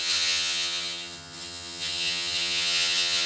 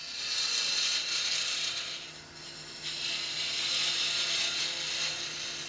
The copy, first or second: first